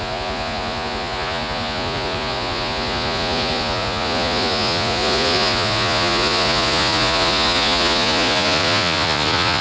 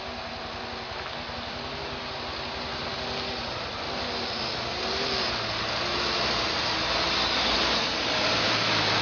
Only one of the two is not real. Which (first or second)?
first